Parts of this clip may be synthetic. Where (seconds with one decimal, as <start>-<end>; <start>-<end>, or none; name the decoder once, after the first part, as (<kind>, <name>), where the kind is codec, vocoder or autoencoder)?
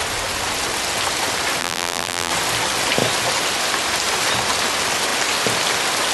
1.6-2.3 (vocoder, BigVGAN v2)